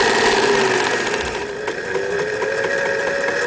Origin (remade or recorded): recorded